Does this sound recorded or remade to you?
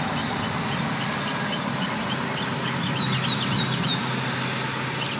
recorded